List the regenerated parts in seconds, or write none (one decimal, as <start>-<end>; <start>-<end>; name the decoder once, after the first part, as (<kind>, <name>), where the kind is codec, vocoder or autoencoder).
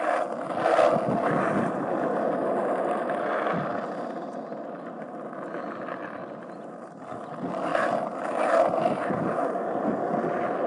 none